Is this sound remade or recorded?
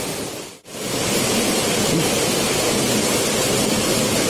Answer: recorded